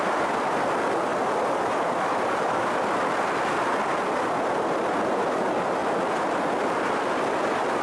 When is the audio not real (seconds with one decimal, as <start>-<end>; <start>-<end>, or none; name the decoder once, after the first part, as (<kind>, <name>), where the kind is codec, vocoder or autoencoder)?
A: none